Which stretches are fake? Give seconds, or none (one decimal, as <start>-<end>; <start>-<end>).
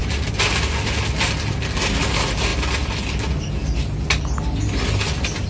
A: none